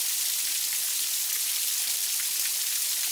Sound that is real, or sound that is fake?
fake